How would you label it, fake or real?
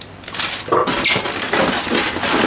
real